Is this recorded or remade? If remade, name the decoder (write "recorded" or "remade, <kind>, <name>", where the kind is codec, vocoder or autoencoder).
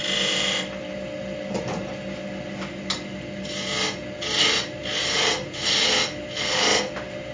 recorded